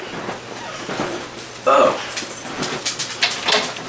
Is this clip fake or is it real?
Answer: real